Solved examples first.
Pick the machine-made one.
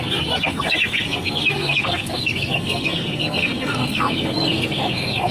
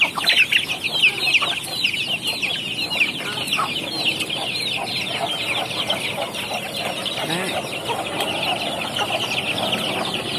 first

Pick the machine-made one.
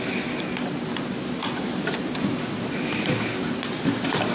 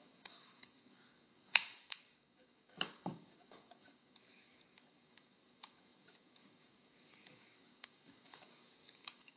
second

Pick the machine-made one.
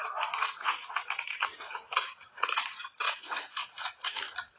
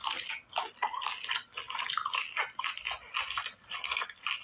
first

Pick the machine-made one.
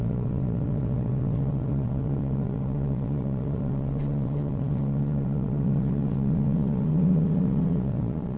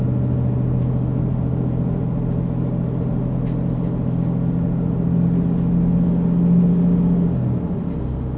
first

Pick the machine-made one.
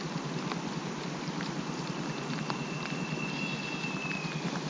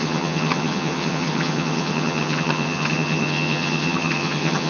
second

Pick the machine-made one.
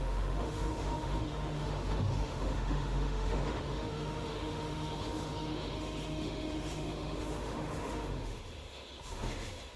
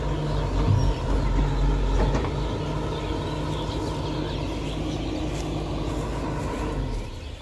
first